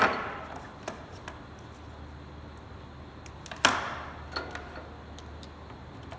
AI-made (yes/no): no